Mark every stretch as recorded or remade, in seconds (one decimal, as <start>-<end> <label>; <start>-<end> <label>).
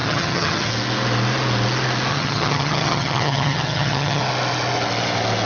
0.0-0.7 remade; 0.7-2.1 recorded; 2.1-4.2 remade; 4.2-5.5 recorded